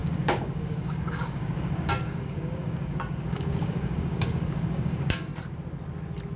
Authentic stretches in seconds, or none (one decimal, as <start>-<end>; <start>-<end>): 5.3-6.4